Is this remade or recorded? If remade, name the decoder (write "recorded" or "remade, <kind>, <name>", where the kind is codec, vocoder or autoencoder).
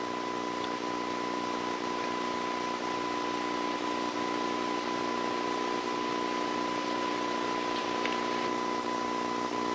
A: recorded